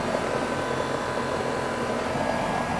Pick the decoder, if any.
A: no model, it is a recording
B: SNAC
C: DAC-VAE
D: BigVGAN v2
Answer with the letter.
A